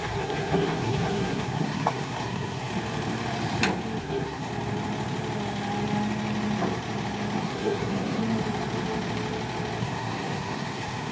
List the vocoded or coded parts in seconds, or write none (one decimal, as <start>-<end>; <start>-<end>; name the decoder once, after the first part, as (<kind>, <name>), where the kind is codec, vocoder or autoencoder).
0.0-2.7 (codec, SNAC); 4.0-4.5; 7.4-8.2; 9.8-11.1